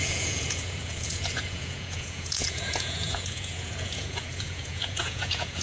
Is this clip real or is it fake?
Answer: fake